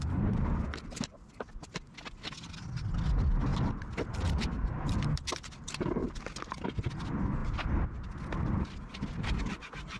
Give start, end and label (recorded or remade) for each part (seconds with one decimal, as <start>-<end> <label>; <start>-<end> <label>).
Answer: 0.0-10.0 recorded